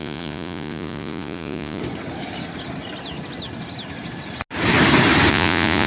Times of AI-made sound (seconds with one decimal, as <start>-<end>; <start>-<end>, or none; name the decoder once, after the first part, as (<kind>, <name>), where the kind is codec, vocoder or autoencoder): 0.0-1.8 (vocoder, Vocos); 5.3-5.9